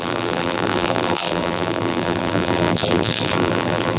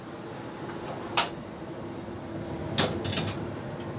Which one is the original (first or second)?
second